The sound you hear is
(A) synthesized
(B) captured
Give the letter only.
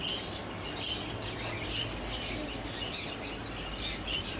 B